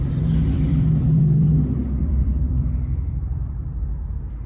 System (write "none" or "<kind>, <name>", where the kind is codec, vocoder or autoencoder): vocoder, BigVGAN v2